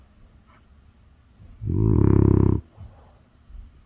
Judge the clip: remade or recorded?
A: recorded